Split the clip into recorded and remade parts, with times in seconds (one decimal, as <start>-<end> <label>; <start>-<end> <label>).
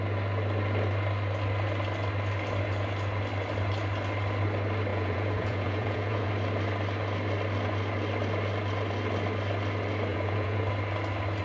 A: 0.0-4.9 recorded; 4.9-6.3 remade; 6.3-10.1 recorded; 10.1-10.6 remade; 10.6-11.4 recorded